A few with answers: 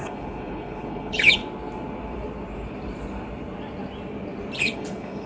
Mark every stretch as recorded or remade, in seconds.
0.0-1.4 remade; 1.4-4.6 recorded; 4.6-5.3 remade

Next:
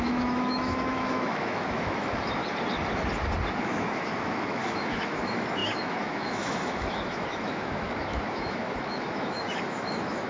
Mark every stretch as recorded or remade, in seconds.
0.0-2.4 remade; 2.4-3.6 recorded; 3.6-10.3 remade

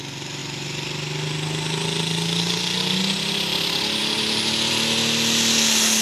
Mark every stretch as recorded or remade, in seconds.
0.0-6.0 recorded

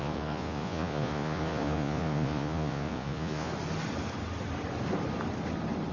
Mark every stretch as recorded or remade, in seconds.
0.0-3.5 remade; 3.5-5.9 recorded

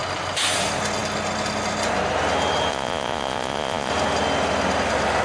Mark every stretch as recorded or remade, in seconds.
0.0-2.7 recorded; 2.7-3.9 remade; 3.9-5.2 recorded

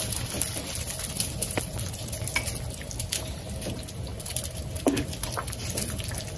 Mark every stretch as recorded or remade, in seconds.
0.0-6.4 recorded